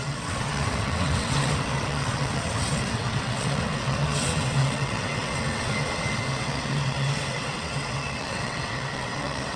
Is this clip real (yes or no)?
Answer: no